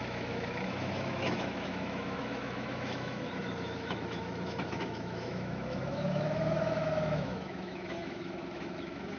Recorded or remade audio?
remade